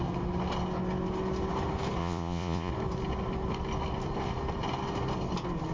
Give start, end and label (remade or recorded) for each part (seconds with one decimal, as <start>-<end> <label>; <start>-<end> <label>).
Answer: 0.0-2.0 recorded; 2.0-2.7 remade; 2.7-5.7 recorded